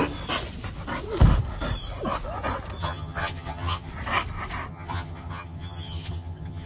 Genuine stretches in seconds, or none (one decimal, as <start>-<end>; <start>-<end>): 0.0-2.8; 3.9-4.7